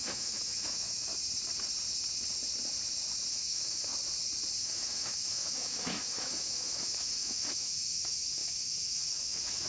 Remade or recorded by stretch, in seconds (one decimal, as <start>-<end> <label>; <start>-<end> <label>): 0.0-1.1 remade; 1.1-3.3 recorded; 3.3-3.9 remade; 3.9-4.6 recorded; 4.6-9.7 remade